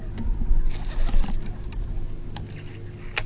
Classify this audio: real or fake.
real